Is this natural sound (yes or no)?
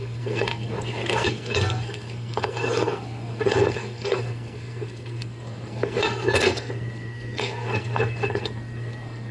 no